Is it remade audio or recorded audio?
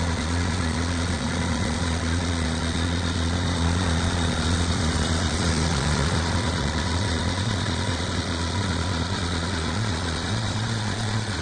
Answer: remade